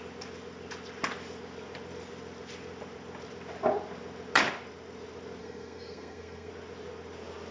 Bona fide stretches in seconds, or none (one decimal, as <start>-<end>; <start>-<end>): 0.0-5.4; 6.5-7.5